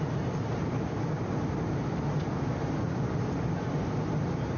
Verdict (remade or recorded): recorded